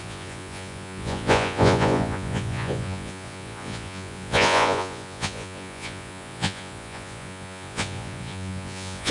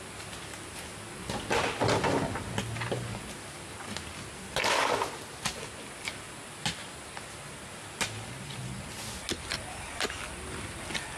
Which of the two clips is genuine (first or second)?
second